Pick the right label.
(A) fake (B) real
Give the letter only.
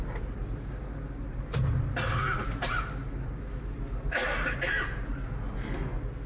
B